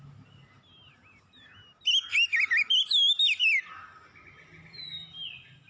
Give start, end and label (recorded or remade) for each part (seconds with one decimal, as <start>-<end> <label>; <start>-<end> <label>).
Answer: 0.0-5.7 recorded

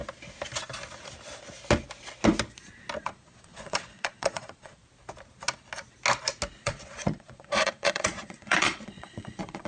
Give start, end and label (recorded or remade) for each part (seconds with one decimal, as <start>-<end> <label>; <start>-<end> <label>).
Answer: 0.0-3.0 recorded; 3.0-4.8 remade; 4.8-6.6 recorded; 6.6-9.7 remade

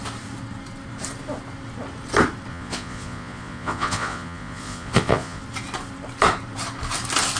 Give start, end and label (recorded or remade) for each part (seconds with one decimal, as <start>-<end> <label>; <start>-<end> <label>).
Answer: 0.0-2.5 recorded; 2.5-5.4 remade; 5.4-7.4 recorded

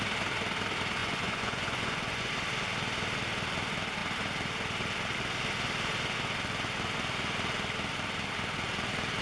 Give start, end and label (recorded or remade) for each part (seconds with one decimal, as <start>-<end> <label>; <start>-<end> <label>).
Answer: 0.0-1.0 recorded; 1.0-2.3 remade; 2.3-9.2 recorded

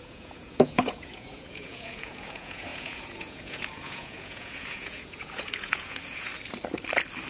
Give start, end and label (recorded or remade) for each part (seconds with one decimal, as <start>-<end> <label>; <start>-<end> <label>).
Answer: 0.0-6.3 remade; 6.3-7.3 recorded

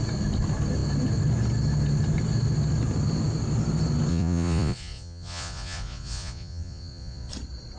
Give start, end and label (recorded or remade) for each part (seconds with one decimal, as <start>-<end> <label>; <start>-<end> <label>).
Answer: 0.0-4.1 recorded; 4.1-7.3 remade; 7.3-7.8 recorded

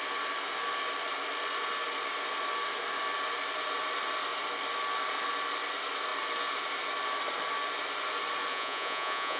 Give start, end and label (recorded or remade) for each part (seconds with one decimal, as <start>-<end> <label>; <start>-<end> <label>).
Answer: 0.0-8.5 recorded; 8.5-9.4 remade

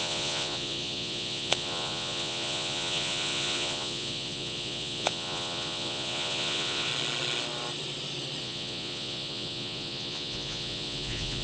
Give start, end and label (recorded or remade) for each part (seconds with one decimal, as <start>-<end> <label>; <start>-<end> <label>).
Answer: 0.0-6.9 remade; 6.9-8.4 recorded; 8.4-11.4 remade